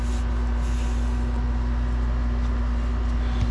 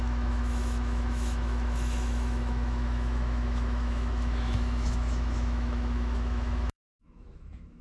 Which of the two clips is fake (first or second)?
second